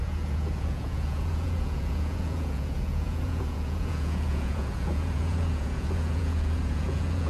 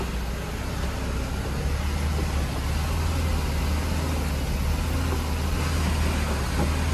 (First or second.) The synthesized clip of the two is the first